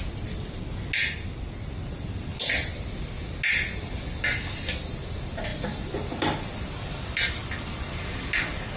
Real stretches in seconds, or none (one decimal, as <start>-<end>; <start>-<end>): 0.0-8.8